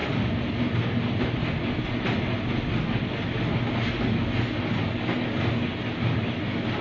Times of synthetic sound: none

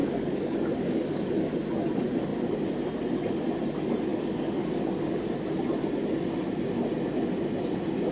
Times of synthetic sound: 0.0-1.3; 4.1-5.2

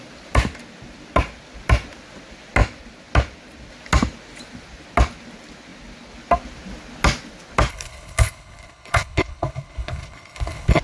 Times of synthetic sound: 7.7-10.8